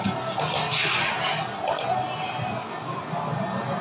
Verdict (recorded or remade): recorded